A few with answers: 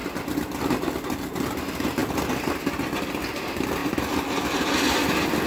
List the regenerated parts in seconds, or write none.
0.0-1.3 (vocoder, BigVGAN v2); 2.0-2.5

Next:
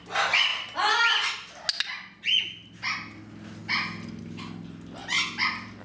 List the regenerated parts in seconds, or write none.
none

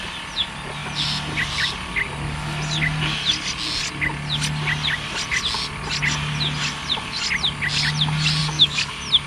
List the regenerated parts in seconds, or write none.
8.4-8.9 (codec, DAC)

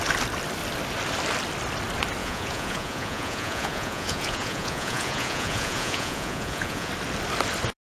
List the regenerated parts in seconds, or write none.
2.2-6.9 (vocoder, Vocos)

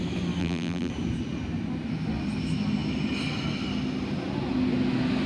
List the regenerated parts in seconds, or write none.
0.4-0.9 (vocoder, BigVGAN v2)

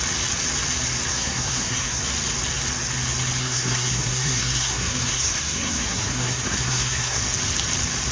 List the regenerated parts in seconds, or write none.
1.1-2.0 (codec, SNAC); 3.4-7.2

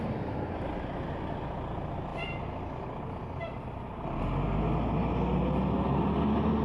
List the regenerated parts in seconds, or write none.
none

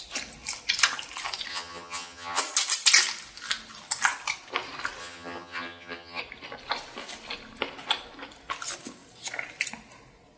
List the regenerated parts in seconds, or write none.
1.5-2.4 (vocoder, HiFi-GAN); 5.0-6.2